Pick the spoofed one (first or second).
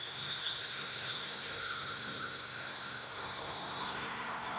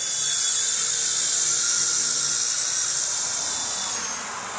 first